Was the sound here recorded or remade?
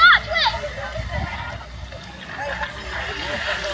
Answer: recorded